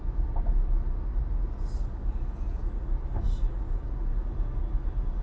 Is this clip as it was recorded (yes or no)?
yes